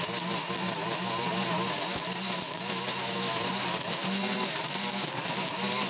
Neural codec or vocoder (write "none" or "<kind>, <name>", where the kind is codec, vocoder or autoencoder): none